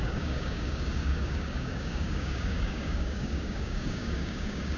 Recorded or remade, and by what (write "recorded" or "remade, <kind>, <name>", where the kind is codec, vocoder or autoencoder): remade, codec, DAC